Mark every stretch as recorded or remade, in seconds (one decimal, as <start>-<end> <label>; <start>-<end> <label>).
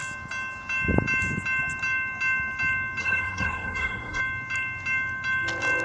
0.0-3.0 recorded; 3.0-4.2 remade; 4.2-5.8 recorded